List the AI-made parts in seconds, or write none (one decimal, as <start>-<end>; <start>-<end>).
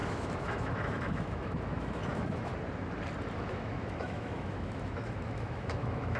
0.0-2.5; 3.5-6.2